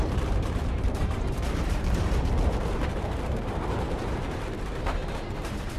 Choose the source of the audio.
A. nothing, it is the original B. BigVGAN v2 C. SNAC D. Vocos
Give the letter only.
B